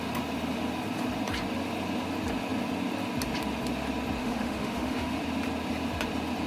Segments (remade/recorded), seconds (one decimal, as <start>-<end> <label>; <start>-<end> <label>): 0.0-4.2 recorded; 4.2-5.2 remade; 5.2-6.5 recorded